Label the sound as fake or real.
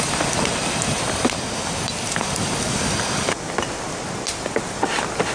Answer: real